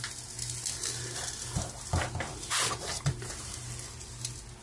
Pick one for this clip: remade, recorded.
recorded